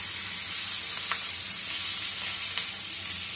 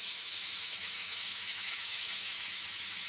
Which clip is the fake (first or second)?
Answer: second